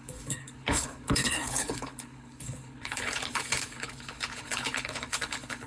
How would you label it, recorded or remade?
remade